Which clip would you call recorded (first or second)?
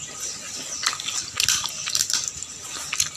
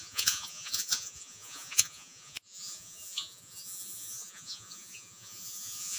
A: first